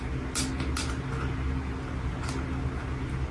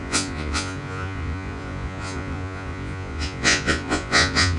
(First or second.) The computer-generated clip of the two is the second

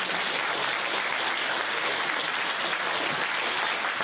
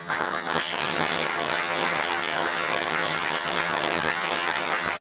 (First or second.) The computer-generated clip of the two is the second